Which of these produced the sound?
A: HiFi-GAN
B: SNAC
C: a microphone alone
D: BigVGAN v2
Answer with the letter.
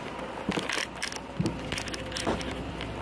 C